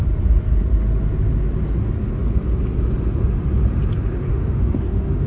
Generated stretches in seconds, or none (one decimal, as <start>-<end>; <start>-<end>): 4.3-5.3